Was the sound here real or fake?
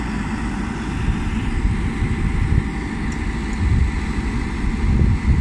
real